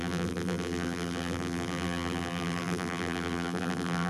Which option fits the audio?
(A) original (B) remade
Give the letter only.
B